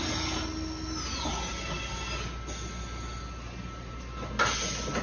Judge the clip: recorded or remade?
recorded